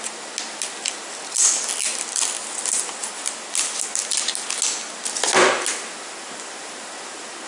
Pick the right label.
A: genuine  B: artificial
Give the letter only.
A